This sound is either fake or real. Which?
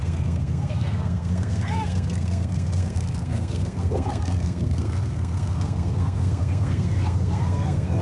fake